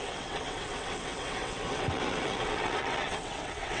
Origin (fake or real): fake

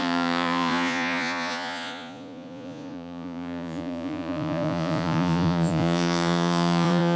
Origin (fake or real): fake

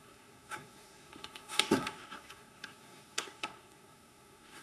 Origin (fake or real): fake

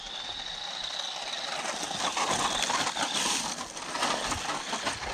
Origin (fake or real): real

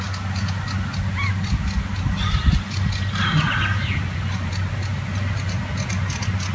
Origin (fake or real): real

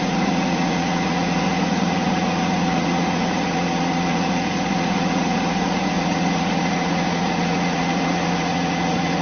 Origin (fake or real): fake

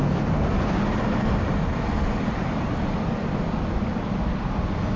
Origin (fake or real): real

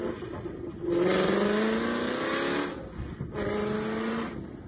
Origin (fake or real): real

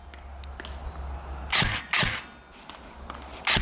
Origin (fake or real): real